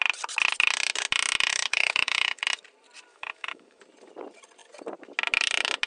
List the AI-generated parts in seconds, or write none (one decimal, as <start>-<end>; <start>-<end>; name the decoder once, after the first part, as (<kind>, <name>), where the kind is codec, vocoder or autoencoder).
1.5-2.4 (autoencoder, DAC-VAE); 3.1-3.8